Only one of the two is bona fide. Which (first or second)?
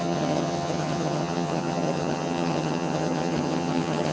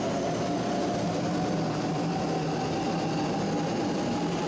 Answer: second